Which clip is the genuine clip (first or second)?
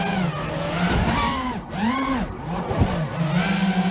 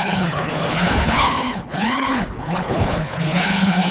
first